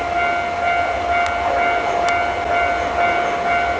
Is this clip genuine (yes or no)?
yes